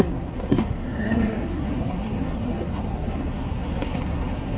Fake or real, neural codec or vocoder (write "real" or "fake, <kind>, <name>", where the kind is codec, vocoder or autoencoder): fake, codec, SNAC